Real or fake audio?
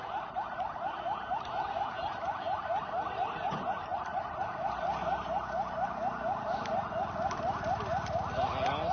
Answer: real